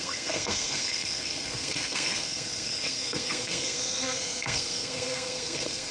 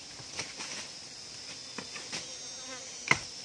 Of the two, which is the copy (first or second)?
first